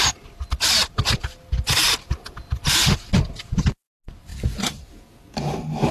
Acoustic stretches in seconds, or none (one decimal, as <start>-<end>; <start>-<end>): 0.0-4.3; 4.9-5.9

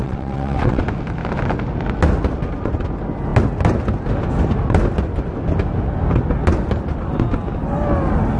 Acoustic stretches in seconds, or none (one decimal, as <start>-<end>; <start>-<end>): 0.8-8.4

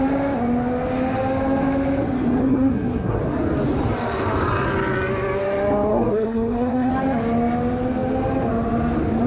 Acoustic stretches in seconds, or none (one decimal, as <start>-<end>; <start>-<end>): 0.0-2.4; 3.2-5.9; 6.9-9.3